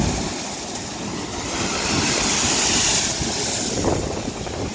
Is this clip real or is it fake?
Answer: real